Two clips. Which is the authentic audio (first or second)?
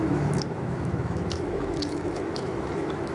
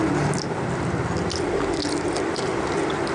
second